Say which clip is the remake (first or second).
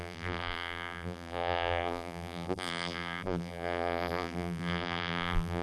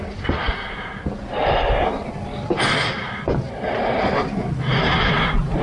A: first